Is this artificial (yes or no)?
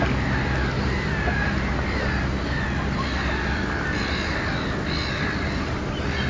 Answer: no